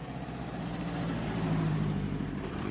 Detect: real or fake real